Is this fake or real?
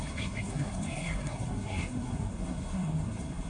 fake